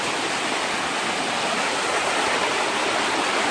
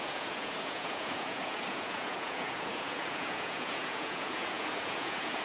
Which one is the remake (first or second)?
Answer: second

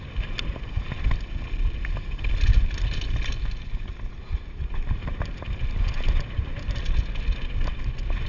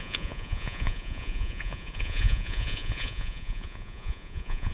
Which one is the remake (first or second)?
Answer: second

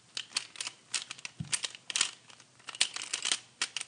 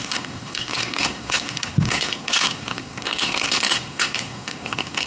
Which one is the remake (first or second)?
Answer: second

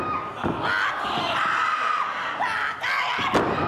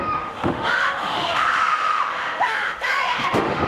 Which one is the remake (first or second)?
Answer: second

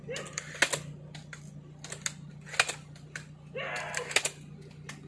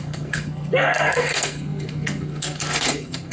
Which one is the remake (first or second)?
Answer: second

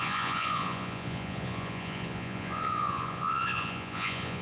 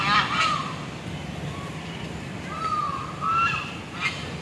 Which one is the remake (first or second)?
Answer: first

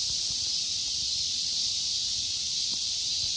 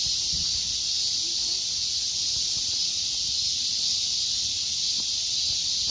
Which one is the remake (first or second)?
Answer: first